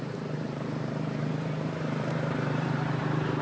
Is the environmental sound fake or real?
fake